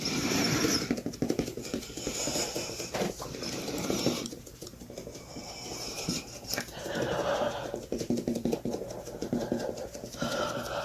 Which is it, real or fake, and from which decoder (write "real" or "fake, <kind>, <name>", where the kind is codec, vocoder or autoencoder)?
fake, vocoder, BigVGAN v2